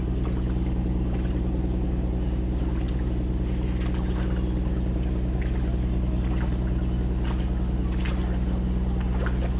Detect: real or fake real